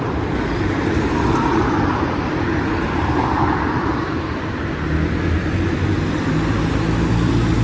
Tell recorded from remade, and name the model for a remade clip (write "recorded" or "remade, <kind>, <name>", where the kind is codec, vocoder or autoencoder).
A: recorded